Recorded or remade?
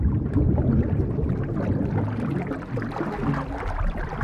recorded